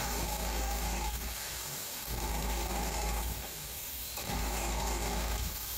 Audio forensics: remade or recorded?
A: remade